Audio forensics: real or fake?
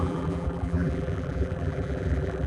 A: fake